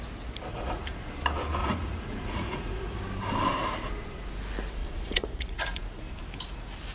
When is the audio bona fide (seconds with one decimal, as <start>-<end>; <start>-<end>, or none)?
0.0-0.5; 1.1-1.6; 3.0-4.8; 5.8-6.9